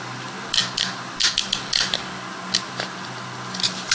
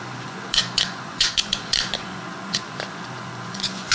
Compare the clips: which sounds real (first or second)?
first